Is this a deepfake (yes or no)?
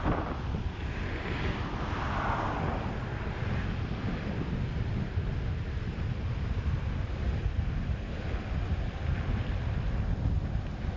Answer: no